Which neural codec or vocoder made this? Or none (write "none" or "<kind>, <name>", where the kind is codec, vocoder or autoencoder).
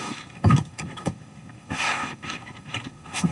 codec, SNAC